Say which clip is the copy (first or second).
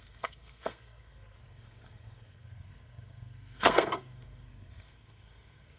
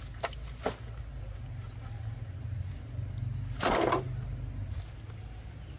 first